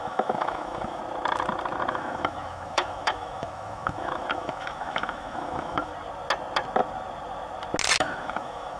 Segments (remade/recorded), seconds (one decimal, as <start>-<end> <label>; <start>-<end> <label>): 0.0-1.0 remade; 1.0-1.9 recorded; 1.9-5.9 remade; 5.9-8.0 recorded; 8.0-8.8 remade